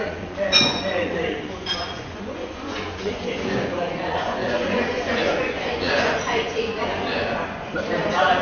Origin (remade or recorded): remade